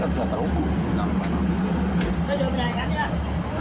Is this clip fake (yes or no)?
no